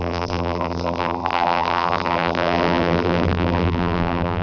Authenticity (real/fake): fake